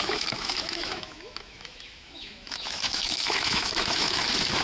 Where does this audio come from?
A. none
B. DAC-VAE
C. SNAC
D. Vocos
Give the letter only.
B